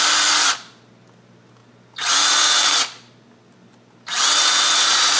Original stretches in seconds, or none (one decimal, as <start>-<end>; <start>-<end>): 0.0-5.2